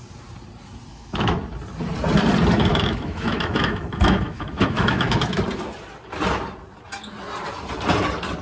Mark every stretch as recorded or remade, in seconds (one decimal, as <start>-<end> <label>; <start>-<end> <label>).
0.0-0.9 recorded; 0.9-1.4 remade; 1.4-2.7 recorded; 2.7-5.3 remade; 5.3-8.4 recorded